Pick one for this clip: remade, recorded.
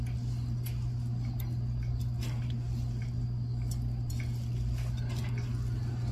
recorded